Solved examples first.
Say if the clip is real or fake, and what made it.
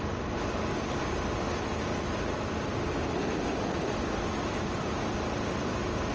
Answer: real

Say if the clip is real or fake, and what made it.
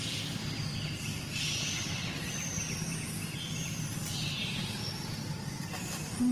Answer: real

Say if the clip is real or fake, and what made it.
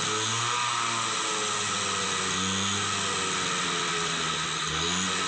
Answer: real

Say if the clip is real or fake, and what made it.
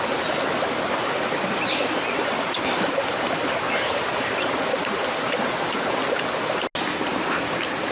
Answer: real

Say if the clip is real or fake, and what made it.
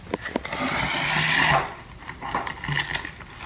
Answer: real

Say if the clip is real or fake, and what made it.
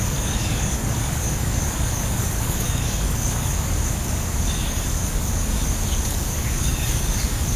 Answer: fake, codec, DAC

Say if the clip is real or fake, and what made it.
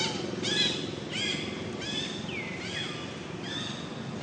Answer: real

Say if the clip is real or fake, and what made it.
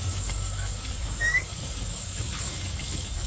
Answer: fake, codec, DAC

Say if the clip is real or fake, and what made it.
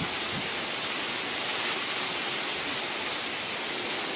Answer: real